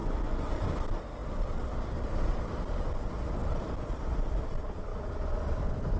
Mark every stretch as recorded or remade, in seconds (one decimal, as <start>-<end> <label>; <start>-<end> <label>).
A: 0.0-0.5 remade; 0.5-6.0 recorded